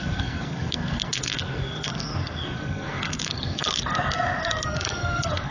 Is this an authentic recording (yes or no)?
no